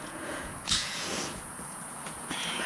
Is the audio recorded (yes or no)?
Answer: no